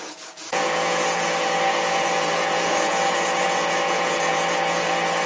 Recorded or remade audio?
remade